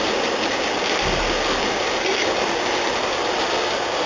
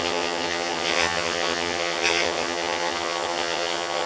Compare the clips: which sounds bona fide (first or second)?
first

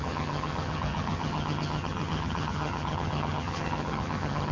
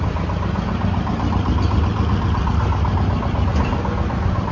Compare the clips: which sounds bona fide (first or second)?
second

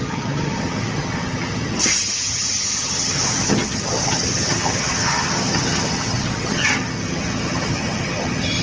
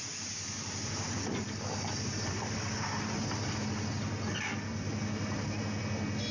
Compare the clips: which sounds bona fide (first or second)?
second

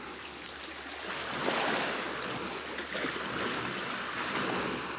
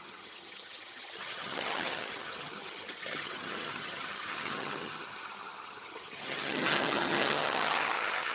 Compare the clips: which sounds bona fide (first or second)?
first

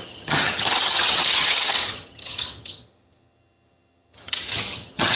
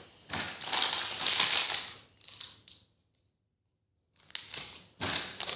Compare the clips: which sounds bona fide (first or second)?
second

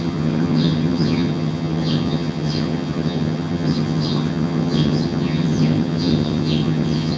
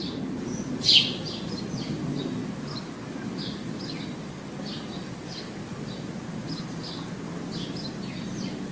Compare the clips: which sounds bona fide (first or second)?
second